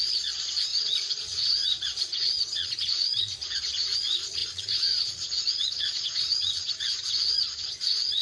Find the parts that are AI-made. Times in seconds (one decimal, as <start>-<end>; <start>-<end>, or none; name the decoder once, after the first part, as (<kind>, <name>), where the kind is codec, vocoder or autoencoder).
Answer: 0.0-8.2 (vocoder, Vocos)